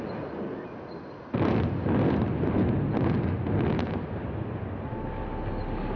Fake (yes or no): no